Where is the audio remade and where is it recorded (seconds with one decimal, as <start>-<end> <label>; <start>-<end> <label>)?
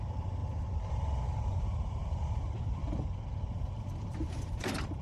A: 0.0-0.4 remade; 0.4-0.9 recorded; 0.9-2.8 remade; 2.8-3.4 recorded; 3.4-5.0 remade